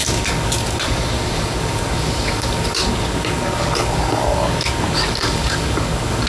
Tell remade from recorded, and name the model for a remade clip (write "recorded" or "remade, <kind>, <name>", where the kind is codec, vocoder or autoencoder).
remade, codec, DAC